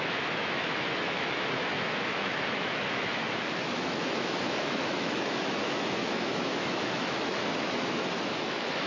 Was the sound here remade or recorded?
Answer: remade